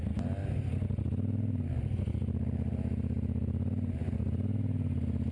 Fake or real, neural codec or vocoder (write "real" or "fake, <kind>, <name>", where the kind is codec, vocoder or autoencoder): real